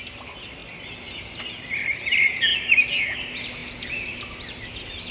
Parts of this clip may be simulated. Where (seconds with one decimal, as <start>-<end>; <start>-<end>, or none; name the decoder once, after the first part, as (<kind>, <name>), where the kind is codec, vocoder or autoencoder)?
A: none